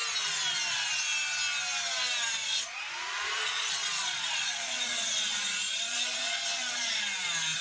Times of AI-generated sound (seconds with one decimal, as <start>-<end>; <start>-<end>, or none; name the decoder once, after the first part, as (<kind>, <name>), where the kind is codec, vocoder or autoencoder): 2.4-7.0 (vocoder, Vocos)